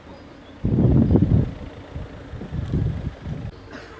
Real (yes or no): yes